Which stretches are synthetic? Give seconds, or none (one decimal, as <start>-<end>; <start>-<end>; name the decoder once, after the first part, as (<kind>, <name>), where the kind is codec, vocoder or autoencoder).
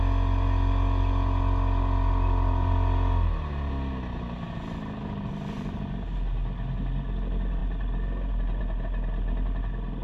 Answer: none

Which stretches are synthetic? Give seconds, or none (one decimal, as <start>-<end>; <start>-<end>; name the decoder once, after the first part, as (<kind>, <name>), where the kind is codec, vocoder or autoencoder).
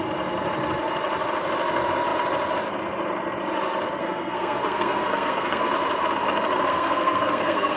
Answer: 4.0-5.6 (codec, SNAC); 6.7-7.8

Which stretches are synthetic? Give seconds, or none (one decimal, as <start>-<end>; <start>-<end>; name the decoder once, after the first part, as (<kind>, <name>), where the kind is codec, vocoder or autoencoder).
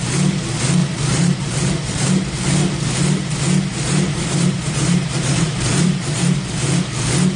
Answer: 0.8-2.1 (vocoder, BigVGAN v2); 3.7-6.5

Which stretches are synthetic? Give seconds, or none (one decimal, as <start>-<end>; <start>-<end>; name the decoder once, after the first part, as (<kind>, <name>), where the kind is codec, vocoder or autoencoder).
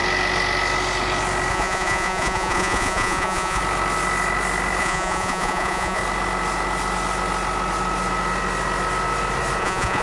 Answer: 1.5-3.6 (vocoder, Vocos); 4.8-6.0; 9.6-10.0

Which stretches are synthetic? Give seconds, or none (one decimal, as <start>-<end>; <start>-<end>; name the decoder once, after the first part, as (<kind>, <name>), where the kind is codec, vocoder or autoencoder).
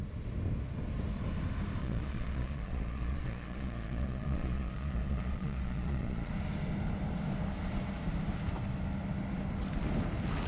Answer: 1.8-6.3 (vocoder, Vocos)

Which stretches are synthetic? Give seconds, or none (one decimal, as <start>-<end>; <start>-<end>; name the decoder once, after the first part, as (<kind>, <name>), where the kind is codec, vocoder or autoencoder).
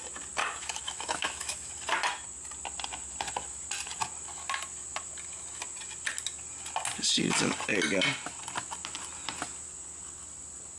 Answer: 0.4-1.7 (autoencoder, DAC-VAE)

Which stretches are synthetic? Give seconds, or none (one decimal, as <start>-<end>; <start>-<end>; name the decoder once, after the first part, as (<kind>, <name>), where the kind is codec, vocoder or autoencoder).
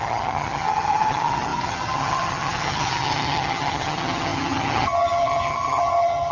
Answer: 0.0-6.3 (vocoder, HiFi-GAN)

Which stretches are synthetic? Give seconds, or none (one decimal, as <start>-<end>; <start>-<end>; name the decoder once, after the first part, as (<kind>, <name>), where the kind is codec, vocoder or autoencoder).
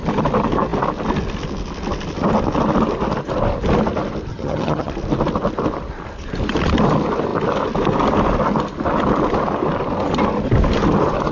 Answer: 4.3-4.9 (vocoder, HiFi-GAN)